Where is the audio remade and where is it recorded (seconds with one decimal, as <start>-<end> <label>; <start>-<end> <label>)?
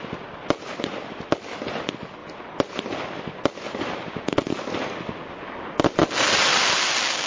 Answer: 0.0-7.3 recorded